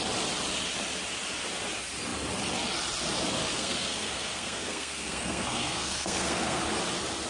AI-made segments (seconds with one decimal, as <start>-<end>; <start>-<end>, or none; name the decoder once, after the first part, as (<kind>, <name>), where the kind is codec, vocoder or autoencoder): 3.5-6.6 (codec, SNAC)